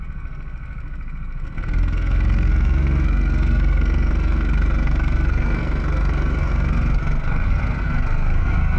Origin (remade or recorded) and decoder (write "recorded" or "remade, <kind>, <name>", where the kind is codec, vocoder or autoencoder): remade, codec, SNAC